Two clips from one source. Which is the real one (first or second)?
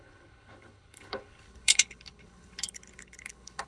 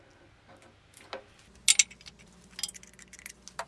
second